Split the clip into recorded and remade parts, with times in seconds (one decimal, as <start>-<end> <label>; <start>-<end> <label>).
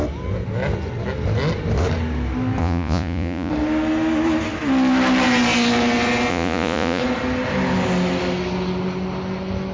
0.0-2.6 recorded; 2.6-3.5 remade; 3.5-6.3 recorded; 6.3-7.0 remade; 7.0-9.7 recorded